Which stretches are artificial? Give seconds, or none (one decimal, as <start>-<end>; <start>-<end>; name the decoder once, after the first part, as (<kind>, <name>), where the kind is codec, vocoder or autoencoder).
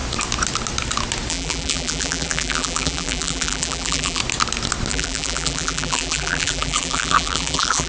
1.3-4.2 (vocoder, BigVGAN v2); 4.9-7.9